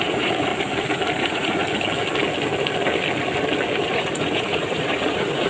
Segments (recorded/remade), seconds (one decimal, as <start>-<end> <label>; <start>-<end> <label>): 0.0-0.5 remade; 0.5-1.2 recorded; 1.2-1.6 remade; 1.6-3.9 recorded; 3.9-5.5 remade